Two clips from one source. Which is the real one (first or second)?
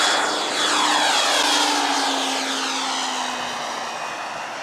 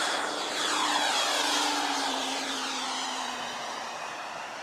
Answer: first